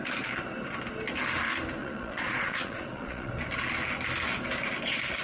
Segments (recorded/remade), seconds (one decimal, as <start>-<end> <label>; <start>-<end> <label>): 0.0-1.8 recorded; 1.8-3.3 remade; 3.3-5.2 recorded